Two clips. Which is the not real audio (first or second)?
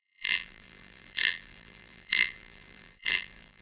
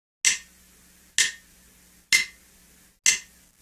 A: first